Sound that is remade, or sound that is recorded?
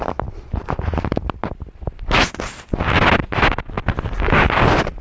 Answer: recorded